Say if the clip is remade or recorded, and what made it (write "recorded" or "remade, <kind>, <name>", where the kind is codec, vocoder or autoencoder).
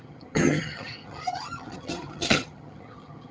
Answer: remade, vocoder, HiFi-GAN